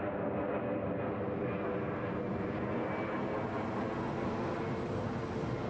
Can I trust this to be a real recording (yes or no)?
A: yes